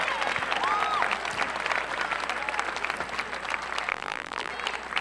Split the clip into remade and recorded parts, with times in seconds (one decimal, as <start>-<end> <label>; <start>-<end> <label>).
0.0-3.9 recorded; 3.9-4.5 remade; 4.5-5.0 recorded